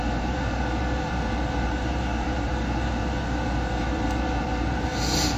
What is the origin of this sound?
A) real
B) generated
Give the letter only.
B